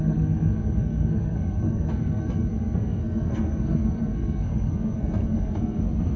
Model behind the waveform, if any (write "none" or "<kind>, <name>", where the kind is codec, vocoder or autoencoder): codec, SNAC